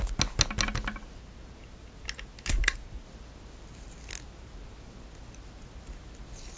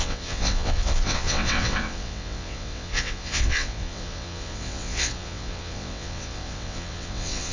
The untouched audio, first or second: first